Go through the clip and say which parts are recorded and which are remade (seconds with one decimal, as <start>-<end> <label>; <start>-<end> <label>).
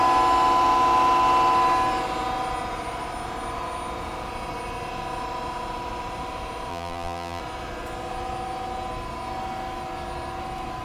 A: 0.0-6.7 recorded; 6.7-7.4 remade; 7.4-10.8 recorded